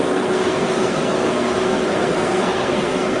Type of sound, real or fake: fake